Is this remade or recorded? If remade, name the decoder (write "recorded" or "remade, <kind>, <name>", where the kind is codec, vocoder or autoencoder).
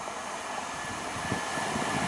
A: recorded